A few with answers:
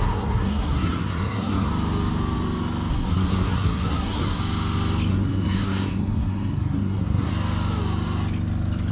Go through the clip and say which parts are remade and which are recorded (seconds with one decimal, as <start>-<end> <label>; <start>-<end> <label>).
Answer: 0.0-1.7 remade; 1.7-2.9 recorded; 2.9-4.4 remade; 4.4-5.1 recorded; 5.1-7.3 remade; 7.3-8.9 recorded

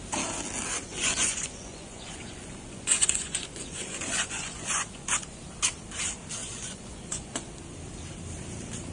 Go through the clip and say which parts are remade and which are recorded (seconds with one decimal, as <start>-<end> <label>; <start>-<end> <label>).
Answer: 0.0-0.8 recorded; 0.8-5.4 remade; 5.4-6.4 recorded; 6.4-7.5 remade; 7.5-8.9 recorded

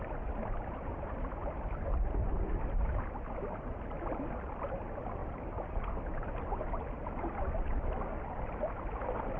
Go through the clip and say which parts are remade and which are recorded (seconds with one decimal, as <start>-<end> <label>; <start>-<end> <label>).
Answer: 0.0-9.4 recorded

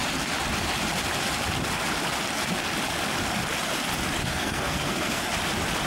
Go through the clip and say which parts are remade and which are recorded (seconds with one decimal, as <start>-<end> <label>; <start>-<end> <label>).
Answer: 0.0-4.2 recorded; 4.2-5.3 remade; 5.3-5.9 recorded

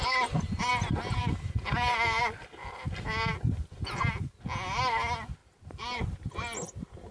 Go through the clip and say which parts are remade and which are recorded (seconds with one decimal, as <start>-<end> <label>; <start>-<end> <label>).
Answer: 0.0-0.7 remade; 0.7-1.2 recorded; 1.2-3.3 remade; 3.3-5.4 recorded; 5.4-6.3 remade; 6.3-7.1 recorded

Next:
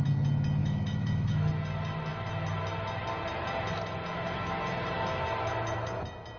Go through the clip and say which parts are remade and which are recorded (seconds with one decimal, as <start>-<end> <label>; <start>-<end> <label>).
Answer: 0.0-0.6 recorded; 0.6-1.5 remade; 1.5-6.4 recorded

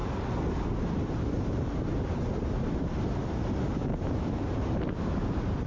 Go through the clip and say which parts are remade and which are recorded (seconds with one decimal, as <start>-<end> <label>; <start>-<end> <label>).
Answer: 0.0-1.1 recorded; 1.1-3.9 remade; 3.9-4.4 recorded; 4.4-5.7 remade

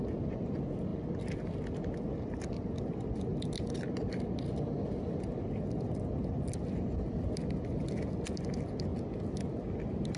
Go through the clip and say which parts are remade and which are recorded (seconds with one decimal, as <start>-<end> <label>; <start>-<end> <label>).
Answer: 0.0-10.2 recorded